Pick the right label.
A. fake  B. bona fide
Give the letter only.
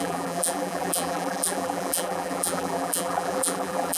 A